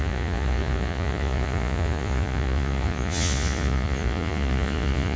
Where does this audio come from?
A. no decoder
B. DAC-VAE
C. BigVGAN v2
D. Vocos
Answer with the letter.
D